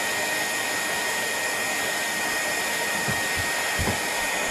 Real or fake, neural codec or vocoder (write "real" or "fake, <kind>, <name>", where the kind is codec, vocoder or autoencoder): real